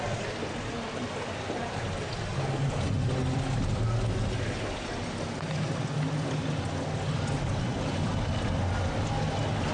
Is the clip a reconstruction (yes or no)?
no